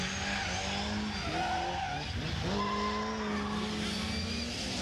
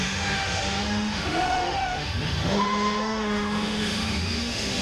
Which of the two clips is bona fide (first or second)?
first